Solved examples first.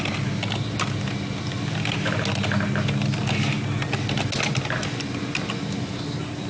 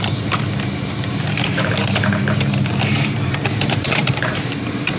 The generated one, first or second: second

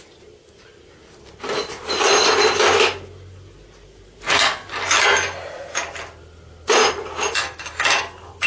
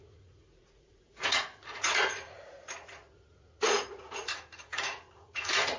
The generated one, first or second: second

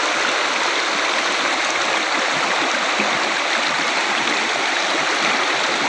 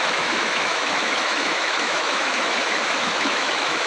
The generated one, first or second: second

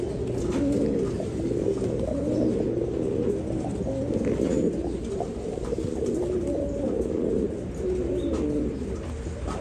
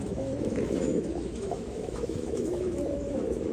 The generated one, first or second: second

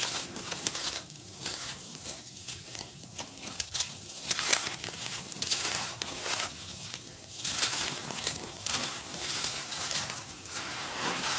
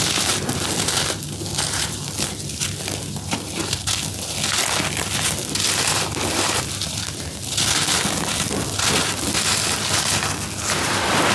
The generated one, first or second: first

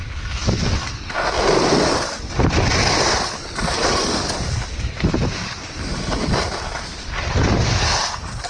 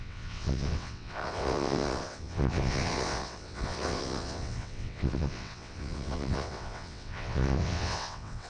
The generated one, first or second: second